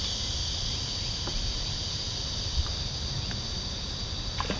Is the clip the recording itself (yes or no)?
yes